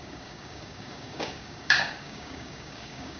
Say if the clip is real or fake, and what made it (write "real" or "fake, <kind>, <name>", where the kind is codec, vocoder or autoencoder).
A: fake, codec, DAC